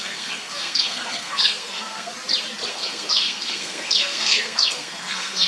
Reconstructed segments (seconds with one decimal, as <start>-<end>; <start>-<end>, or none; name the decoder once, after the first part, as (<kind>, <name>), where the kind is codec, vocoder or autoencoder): 0.0-2.1 (codec, SNAC); 2.7-5.5